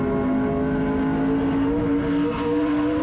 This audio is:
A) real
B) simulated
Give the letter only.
A